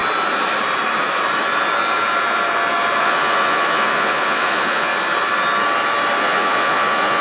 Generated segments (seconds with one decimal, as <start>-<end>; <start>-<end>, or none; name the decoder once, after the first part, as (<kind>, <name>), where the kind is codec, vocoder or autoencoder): 3.0-4.9 (vocoder, Vocos); 6.2-7.2